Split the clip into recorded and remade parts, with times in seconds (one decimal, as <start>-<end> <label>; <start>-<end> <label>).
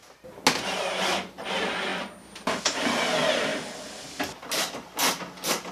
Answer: 0.0-5.7 recorded